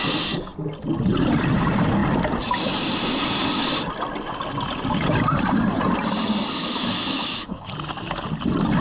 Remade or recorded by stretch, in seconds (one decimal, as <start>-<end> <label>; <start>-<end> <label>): 0.0-6.6 recorded; 6.6-7.7 remade; 7.7-8.8 recorded